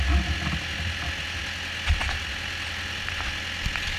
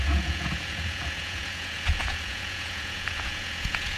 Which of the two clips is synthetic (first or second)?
second